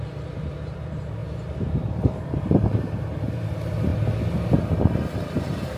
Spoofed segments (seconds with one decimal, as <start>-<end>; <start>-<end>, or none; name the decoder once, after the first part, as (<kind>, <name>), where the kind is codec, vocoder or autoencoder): 0.0-3.9 (vocoder, BigVGAN v2); 4.8-5.8